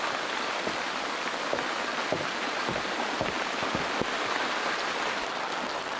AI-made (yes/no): no